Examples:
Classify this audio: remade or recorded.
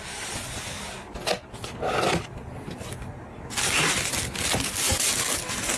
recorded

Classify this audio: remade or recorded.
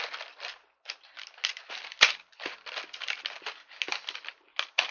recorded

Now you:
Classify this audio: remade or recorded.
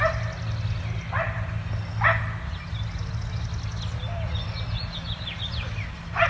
recorded